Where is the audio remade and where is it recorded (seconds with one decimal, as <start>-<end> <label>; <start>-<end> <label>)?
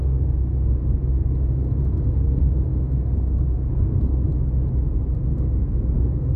0.0-0.8 remade; 0.8-1.8 recorded; 1.8-4.3 remade; 4.3-5.2 recorded; 5.2-6.4 remade